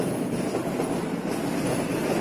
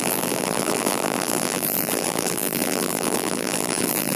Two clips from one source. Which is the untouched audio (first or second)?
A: first